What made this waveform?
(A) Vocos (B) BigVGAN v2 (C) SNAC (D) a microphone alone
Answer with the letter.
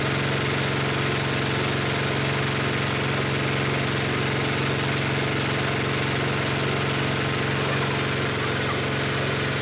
D